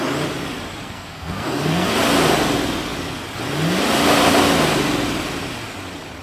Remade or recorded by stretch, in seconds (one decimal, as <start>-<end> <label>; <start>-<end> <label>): 0.0-0.8 recorded; 0.8-1.9 remade; 1.9-6.2 recorded